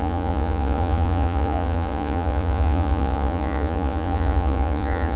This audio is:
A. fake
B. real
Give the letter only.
A